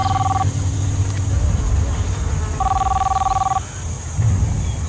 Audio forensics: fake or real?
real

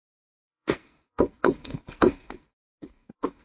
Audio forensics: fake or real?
fake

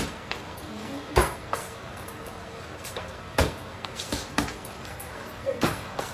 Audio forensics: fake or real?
fake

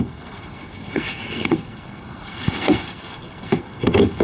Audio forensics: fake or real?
fake